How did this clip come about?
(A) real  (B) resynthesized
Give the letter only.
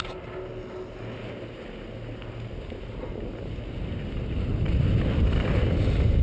A